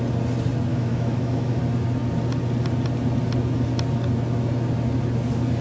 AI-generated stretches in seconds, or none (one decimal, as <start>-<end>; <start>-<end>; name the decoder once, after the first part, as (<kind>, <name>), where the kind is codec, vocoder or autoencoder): 0.7-1.6 (autoencoder, DAC-VAE)